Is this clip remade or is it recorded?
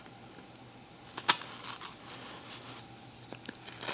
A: recorded